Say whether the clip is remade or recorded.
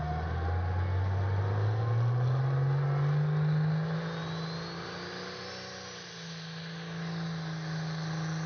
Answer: recorded